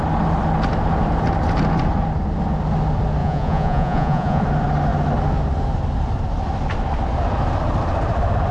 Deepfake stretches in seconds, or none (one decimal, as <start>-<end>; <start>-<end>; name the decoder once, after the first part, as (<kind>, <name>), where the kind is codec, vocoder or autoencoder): 3.2-4.4 (vocoder, Vocos)